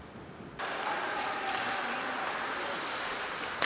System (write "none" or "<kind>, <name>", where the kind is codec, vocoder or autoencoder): none